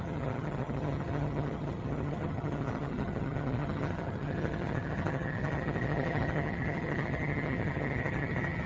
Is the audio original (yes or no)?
no